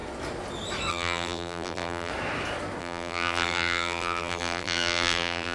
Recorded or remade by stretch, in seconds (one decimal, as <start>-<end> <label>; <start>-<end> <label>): 0.0-0.9 recorded; 0.9-2.1 remade; 2.1-2.8 recorded; 2.8-5.5 remade